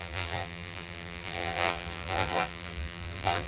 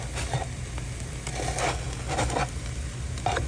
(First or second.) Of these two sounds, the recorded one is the second